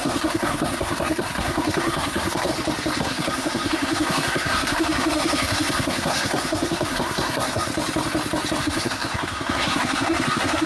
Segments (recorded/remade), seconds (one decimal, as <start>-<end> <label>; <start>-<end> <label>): 0.0-2.5 remade; 2.5-3.0 recorded; 3.0-7.7 remade; 7.7-8.6 recorded; 8.6-10.7 remade